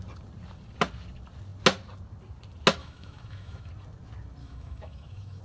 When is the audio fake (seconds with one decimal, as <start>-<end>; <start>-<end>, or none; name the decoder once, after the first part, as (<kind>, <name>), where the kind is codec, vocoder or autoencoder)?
2.8-3.7 (autoencoder, DAC-VAE); 4.4-5.4